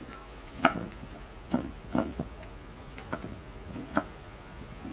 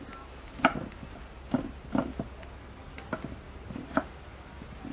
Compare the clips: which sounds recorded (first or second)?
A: second